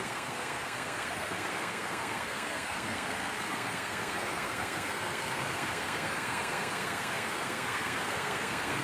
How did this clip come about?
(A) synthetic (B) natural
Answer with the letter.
A